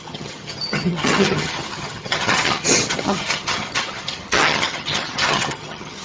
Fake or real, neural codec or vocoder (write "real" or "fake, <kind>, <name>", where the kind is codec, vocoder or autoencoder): fake, vocoder, HiFi-GAN